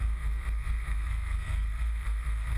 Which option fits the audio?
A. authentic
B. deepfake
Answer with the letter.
B